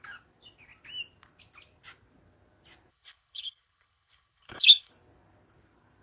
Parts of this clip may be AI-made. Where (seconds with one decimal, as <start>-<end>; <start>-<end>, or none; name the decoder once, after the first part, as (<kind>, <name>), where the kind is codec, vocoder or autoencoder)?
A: 2.9-4.9 (codec, HILCodec)